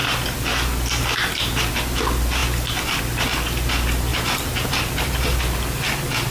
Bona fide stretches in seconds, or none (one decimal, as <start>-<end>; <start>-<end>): 0.0-4.1; 5.4-6.3